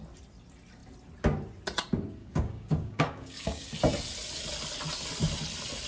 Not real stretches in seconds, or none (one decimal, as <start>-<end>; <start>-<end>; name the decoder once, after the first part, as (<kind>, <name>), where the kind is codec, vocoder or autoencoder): 2.2-3.7 (codec, DAC)